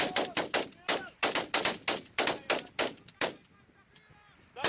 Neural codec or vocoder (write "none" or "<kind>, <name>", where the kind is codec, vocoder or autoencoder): none